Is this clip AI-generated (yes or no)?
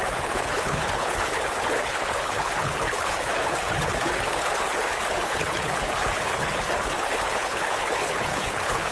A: yes